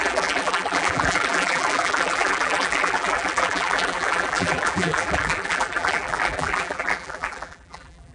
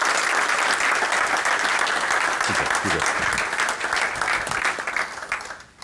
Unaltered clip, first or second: second